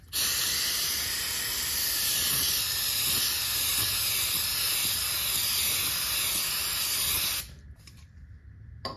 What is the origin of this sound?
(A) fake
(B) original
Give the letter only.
B